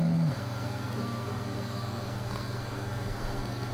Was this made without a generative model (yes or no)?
no